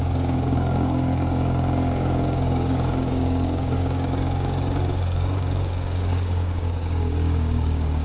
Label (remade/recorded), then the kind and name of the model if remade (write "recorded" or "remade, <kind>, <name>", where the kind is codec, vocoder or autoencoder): remade, codec, DAC